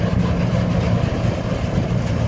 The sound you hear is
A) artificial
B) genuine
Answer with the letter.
B